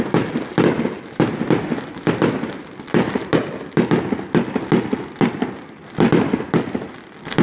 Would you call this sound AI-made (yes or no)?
no